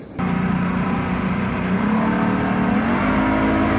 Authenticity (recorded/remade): recorded